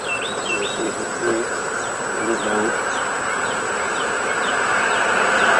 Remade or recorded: remade